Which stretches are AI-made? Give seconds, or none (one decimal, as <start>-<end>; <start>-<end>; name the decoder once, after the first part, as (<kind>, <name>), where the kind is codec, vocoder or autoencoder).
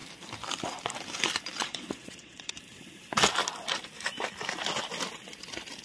1.6-2.6 (vocoder, Vocos)